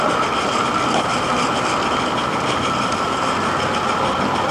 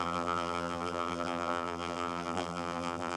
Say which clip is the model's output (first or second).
second